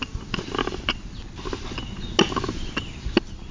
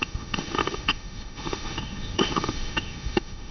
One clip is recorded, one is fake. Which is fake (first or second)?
second